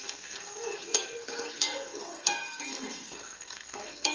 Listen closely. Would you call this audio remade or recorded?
remade